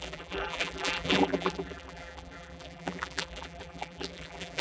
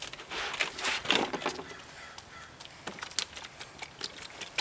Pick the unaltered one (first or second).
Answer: second